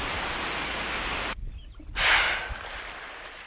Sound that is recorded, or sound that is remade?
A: recorded